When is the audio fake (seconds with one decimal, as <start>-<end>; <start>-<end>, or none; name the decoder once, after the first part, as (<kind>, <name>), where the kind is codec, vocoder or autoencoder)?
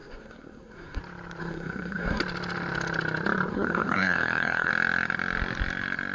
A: 0.0-1.0 (codec, SNAC); 1.4-2.2; 3.5-4.7